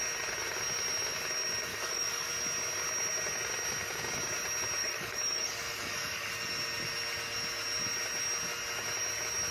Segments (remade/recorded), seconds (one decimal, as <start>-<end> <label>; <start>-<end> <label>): 0.0-1.7 recorded; 1.7-2.3 remade; 2.3-4.8 recorded; 4.8-6.3 remade; 6.3-9.5 recorded